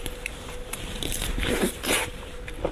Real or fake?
fake